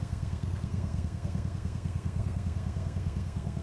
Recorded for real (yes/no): no